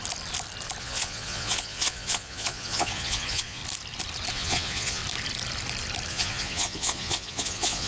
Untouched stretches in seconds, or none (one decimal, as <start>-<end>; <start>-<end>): 0.0-0.8; 3.6-4.3; 5.0-6.1